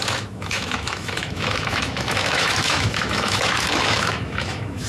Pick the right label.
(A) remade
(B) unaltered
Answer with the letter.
A